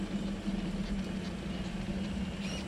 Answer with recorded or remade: recorded